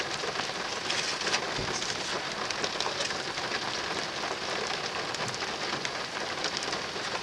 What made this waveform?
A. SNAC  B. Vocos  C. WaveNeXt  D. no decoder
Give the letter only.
D